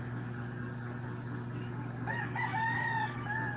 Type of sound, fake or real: real